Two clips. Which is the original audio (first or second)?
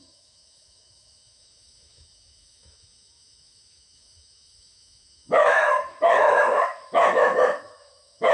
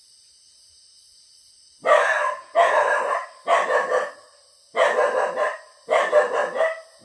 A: second